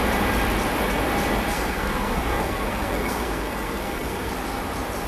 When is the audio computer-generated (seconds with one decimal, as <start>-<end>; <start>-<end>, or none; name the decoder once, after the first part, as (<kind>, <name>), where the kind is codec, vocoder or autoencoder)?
1.5-4.3 (codec, SNAC)